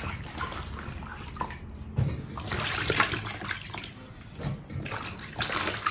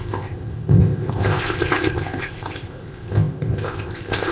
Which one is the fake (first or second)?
second